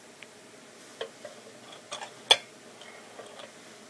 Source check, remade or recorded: recorded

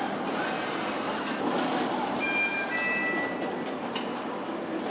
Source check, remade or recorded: recorded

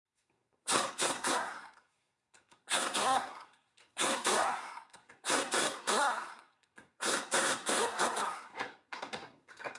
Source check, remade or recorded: remade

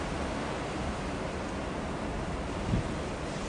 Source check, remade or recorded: recorded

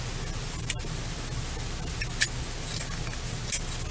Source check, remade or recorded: recorded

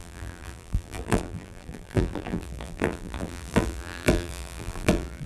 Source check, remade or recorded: remade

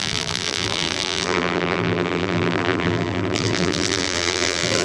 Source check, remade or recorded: remade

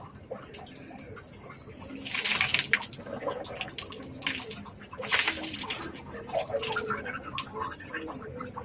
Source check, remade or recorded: recorded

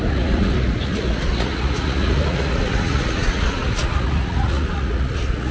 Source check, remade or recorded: remade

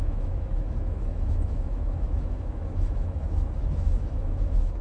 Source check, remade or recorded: remade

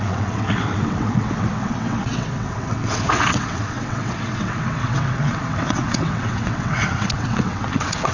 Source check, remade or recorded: remade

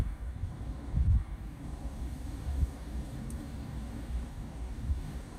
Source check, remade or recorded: remade